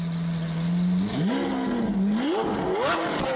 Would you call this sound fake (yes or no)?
no